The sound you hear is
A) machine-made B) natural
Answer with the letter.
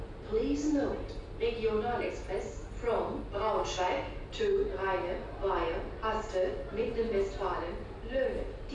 B